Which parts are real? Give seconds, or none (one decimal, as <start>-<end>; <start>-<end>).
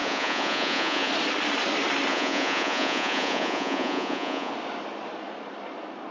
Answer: 1.1-2.1; 4.5-6.1